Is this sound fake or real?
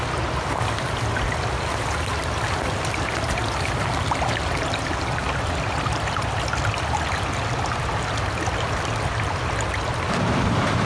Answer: real